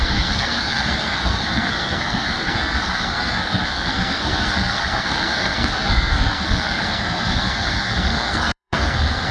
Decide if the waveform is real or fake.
fake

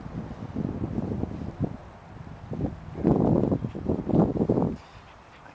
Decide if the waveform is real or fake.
real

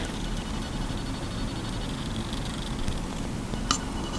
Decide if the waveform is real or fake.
real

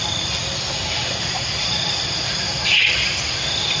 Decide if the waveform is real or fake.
real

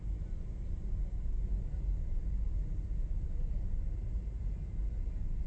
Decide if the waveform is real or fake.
real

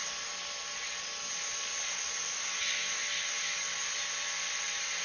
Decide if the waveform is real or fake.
real